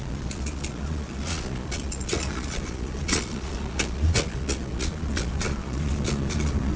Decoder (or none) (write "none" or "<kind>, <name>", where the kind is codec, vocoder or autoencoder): vocoder, Vocos